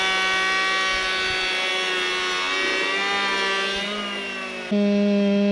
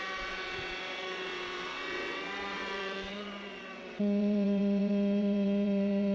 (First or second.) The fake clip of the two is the second